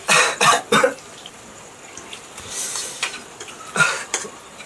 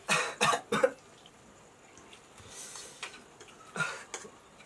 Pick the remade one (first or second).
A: first